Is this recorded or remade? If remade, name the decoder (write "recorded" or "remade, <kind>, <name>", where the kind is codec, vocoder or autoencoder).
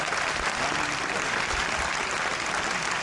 recorded